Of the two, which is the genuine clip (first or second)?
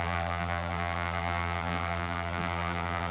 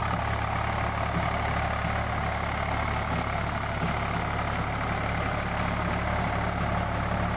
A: second